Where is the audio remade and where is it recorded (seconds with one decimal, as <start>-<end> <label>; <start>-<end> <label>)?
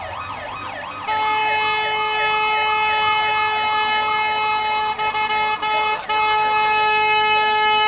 0.0-7.9 recorded